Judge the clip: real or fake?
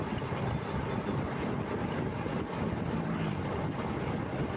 real